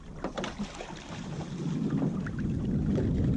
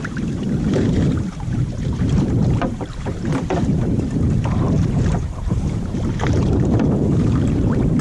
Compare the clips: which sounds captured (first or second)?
first